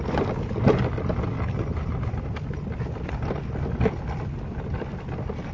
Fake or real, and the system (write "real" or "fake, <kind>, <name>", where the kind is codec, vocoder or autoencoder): real